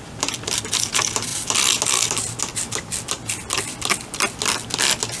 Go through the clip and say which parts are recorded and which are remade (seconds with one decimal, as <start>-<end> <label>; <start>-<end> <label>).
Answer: 0.0-5.2 recorded